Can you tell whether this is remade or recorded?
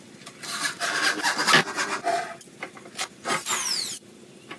recorded